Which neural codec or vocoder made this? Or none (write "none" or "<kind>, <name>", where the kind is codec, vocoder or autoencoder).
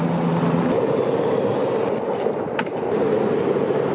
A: none